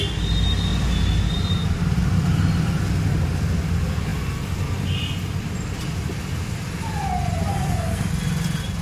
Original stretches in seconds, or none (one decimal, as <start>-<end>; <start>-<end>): 0.0-7.5; 8.1-8.8